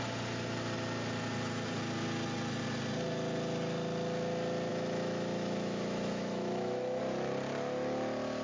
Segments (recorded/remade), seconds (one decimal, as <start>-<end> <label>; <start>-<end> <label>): 0.0-4.7 recorded; 4.7-7.0 remade; 7.0-8.4 recorded